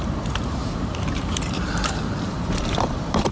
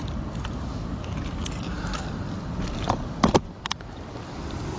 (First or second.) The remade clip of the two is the first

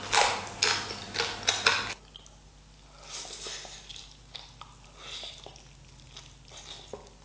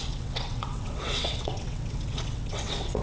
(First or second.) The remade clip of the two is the second